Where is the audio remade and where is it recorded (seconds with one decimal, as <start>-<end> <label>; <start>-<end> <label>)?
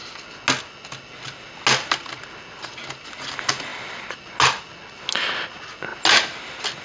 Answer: 0.0-6.8 recorded